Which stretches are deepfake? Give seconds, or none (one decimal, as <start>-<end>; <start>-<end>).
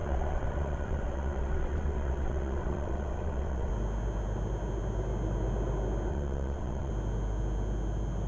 0.0-3.7; 6.1-6.9